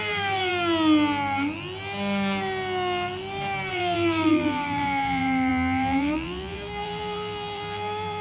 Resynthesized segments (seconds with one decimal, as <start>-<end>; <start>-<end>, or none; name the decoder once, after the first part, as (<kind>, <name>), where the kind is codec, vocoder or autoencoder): 0.0-0.5 (vocoder, BigVGAN v2); 3.7-8.2